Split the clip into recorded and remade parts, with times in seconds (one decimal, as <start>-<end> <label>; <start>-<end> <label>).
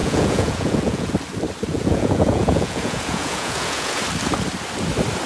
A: 0.0-1.1 remade; 1.1-1.7 recorded; 1.7-4.0 remade; 4.0-5.3 recorded